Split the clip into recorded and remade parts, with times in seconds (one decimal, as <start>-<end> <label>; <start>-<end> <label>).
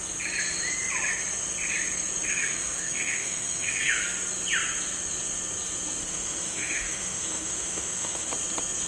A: 0.0-2.3 recorded; 2.3-4.0 remade; 4.0-6.0 recorded; 6.0-8.3 remade; 8.3-8.9 recorded